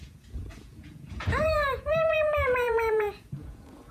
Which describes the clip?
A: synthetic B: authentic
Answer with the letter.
A